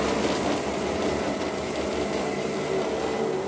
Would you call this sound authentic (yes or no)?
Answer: yes